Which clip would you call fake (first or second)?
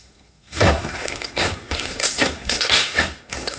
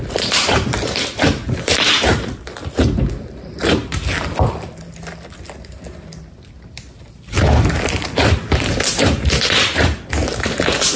first